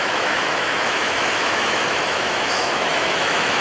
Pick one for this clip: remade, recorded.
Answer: remade